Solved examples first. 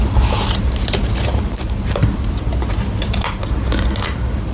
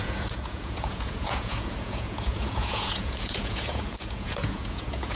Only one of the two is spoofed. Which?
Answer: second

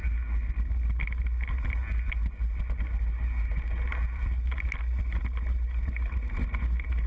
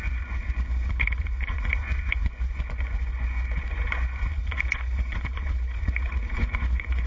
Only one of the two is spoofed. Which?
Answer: second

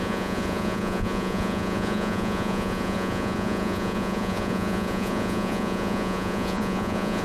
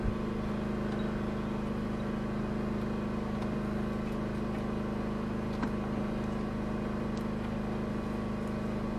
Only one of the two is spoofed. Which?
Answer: first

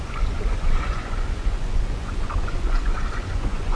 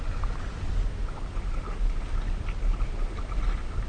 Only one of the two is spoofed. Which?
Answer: first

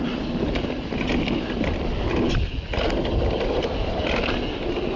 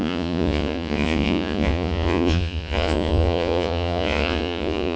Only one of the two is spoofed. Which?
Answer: second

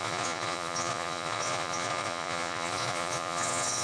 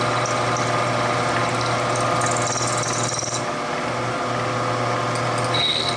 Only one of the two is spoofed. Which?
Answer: first